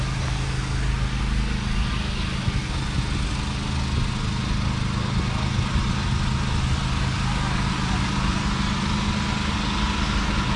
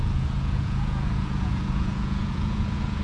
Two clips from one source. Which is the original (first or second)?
first